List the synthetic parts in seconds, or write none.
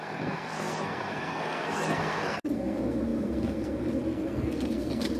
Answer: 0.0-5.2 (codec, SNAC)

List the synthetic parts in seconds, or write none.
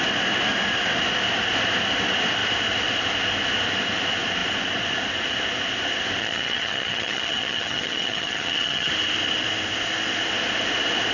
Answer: 6.2-8.9 (vocoder, HiFi-GAN)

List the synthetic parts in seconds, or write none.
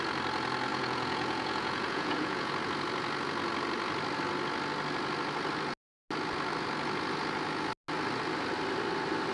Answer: 0.7-2.5 (vocoder, Vocos)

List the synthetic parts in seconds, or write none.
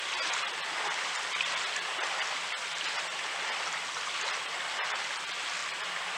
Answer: 5.6-6.2 (vocoder, BigVGAN v2)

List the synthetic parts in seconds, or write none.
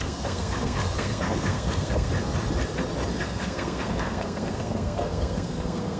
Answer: 0.0-2.1 (codec, SNAC); 3.2-6.0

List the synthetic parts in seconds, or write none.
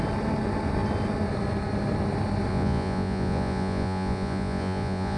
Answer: 2.5-5.2 (vocoder, Vocos)